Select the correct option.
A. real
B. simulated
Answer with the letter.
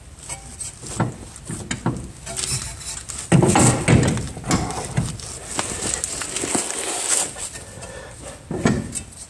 A